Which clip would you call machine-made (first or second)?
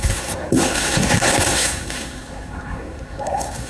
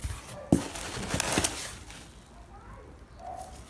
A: first